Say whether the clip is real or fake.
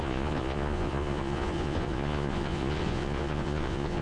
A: fake